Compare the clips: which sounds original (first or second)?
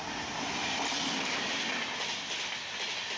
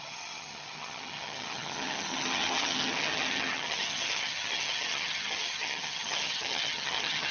first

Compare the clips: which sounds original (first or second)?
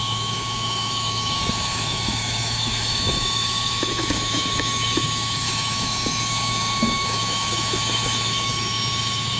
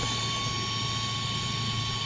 second